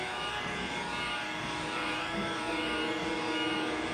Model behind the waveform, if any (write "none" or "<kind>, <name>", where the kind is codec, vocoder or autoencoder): codec, DAC